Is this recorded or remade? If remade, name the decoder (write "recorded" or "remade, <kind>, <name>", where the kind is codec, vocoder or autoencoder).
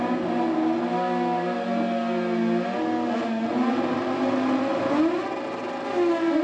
recorded